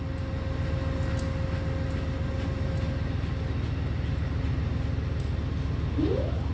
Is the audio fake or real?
real